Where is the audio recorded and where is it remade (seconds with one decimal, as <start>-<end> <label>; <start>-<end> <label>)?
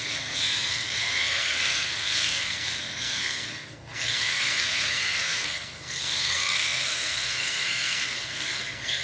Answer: 0.0-9.0 remade